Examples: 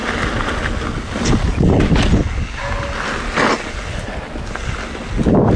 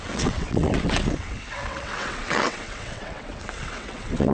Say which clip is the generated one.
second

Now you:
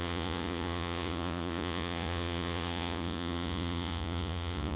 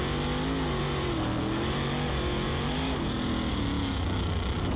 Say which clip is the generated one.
first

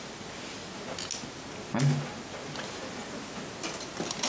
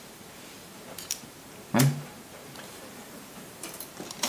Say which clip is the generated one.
second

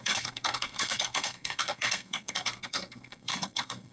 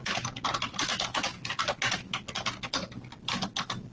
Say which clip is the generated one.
first